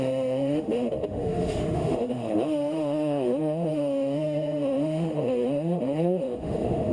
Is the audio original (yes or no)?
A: no